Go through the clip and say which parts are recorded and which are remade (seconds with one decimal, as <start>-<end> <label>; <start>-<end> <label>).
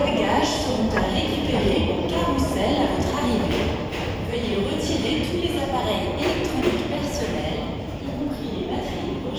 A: 0.0-0.8 remade; 0.8-1.3 recorded; 1.3-1.8 remade; 1.8-3.0 recorded; 3.0-5.1 remade; 5.1-7.0 recorded; 7.0-9.4 remade